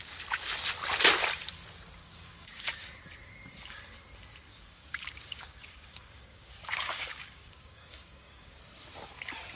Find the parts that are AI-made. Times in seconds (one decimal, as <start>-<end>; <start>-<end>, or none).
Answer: 2.0-2.9; 4.5-8.6